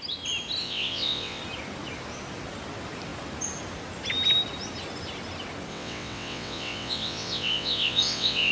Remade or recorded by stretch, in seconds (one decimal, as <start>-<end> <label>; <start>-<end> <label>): 0.0-0.6 recorded; 0.6-1.4 remade; 1.4-5.7 recorded; 5.7-8.5 remade